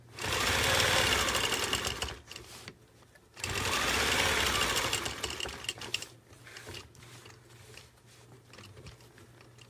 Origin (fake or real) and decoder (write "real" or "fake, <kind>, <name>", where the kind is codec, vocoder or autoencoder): real